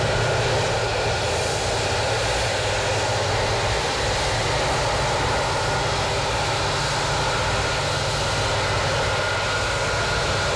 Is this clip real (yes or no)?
yes